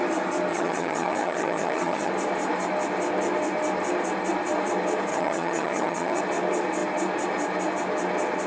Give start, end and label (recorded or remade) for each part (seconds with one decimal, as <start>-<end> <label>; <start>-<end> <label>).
0.0-0.5 recorded; 0.5-2.1 remade; 2.1-5.1 recorded; 5.1-6.2 remade; 6.2-8.5 recorded